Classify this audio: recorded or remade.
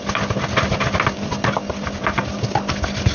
recorded